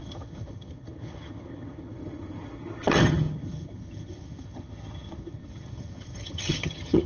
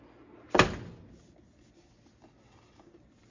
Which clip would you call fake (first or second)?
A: first